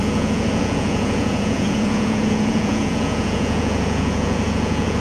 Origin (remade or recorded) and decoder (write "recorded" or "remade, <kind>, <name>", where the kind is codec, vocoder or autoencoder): remade, vocoder, Vocos